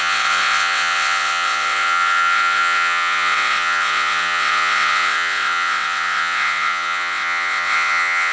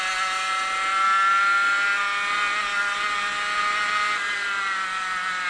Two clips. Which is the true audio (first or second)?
second